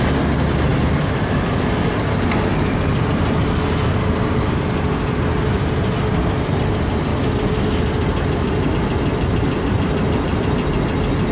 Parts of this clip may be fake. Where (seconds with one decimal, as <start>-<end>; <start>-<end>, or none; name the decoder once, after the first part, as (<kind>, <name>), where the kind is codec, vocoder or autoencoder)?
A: none